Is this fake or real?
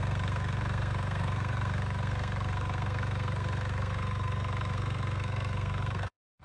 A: fake